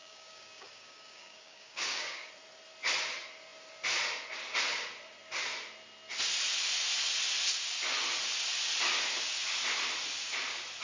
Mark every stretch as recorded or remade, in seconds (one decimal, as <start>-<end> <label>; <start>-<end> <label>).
0.0-2.3 remade; 2.3-10.8 recorded